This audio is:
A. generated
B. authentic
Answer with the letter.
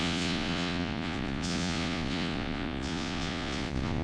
A